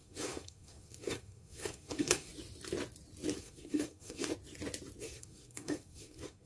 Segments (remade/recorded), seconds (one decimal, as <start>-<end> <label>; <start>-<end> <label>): 0.0-2.3 remade; 2.3-3.4 recorded; 3.4-4.3 remade; 4.3-5.0 recorded; 5.0-6.5 remade